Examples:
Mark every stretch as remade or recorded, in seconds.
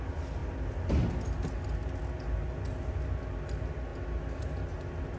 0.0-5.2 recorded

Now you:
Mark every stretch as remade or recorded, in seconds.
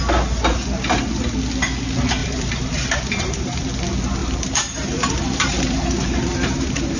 0.0-2.2 recorded; 2.2-3.7 remade; 3.7-4.2 recorded; 4.2-7.0 remade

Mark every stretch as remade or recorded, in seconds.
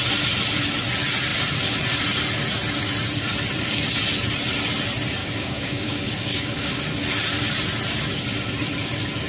0.0-5.2 recorded; 5.2-6.8 remade; 6.8-9.3 recorded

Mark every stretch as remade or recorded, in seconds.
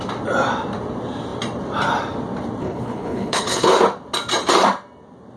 0.0-2.6 recorded; 2.6-3.7 remade; 3.7-5.4 recorded